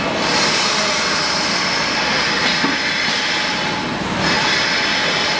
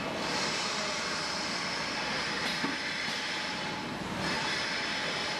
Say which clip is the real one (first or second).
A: first